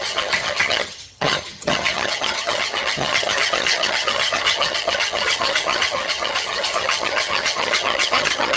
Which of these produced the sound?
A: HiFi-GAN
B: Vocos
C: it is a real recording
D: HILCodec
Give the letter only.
A